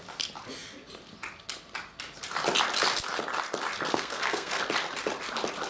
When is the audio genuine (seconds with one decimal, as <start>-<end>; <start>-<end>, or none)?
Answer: 0.0-3.9; 4.6-5.7